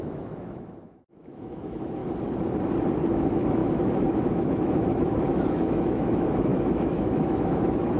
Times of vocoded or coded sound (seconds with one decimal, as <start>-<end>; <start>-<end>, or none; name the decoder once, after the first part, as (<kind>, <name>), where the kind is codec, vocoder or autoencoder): 0.0-2.0 (autoencoder, DAC-VAE); 3.1-8.0